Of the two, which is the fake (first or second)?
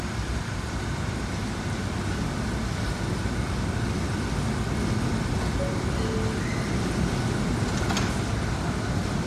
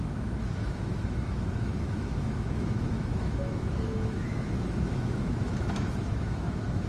second